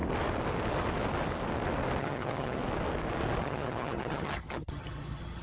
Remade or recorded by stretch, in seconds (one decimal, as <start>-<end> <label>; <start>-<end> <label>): 0.0-2.0 recorded; 2.0-2.6 remade; 2.6-3.4 recorded; 3.4-5.4 remade